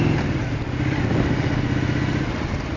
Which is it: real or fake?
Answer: real